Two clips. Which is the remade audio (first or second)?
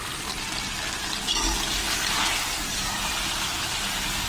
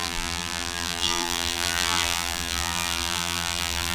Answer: second